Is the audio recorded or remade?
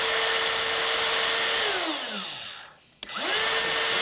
recorded